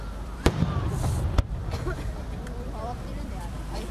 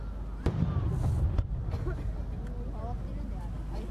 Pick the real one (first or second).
second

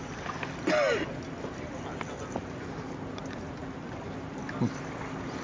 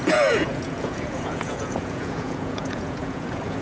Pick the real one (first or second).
first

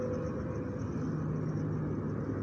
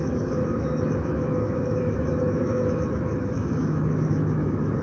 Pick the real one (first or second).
first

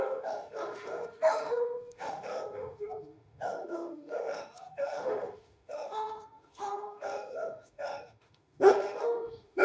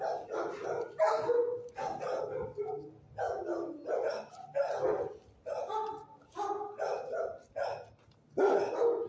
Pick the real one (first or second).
second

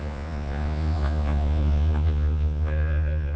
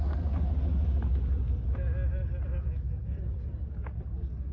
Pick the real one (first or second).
second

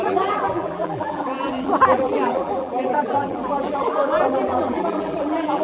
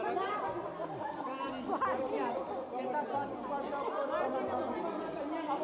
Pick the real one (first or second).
second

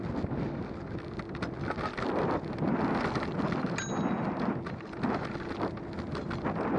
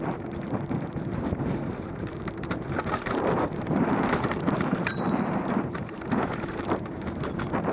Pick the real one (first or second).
first